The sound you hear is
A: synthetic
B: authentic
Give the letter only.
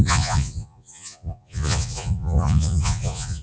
A